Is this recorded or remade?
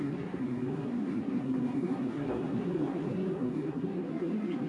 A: remade